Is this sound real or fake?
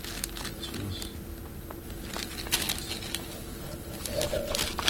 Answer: real